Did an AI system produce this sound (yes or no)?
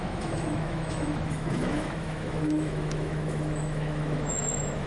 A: yes